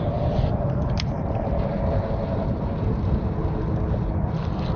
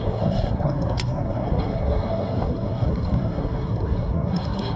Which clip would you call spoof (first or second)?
second